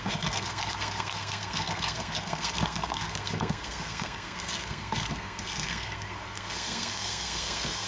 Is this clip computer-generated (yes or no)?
yes